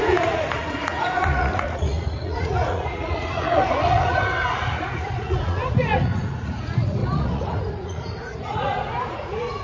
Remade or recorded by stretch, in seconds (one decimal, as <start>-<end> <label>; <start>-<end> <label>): 0.0-9.6 remade